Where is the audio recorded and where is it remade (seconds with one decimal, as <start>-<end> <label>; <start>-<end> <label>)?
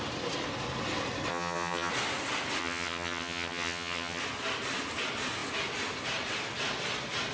0.0-1.3 recorded; 1.3-1.9 remade; 1.9-2.6 recorded; 2.6-4.2 remade; 4.2-7.3 recorded